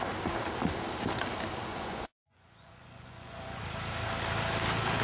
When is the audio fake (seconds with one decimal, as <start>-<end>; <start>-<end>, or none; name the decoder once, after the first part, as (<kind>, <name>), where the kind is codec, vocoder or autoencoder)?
1.7-3.6 (vocoder, Vocos)